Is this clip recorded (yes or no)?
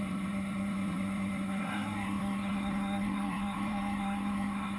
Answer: no